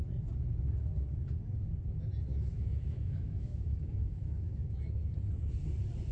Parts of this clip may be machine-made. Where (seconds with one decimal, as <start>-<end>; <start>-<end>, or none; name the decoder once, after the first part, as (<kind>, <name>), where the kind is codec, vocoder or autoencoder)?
2.3-5.0 (autoencoder, DAC-VAE)